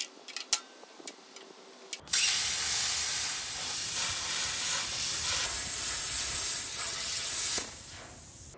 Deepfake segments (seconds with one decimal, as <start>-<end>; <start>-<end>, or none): 6.7-7.3